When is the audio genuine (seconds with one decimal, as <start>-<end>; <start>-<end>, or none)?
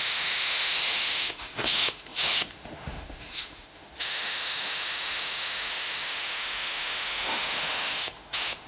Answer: none